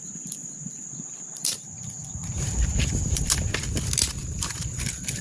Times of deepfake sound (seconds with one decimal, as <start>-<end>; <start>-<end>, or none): 0.4-3.2; 4.2-5.2